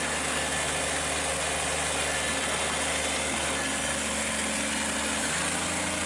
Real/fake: real